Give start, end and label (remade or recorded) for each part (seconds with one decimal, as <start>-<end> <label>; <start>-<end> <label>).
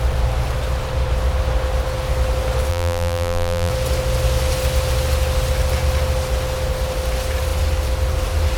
0.0-2.7 recorded; 2.7-3.7 remade; 3.7-8.6 recorded